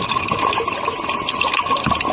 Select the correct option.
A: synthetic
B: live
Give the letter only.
B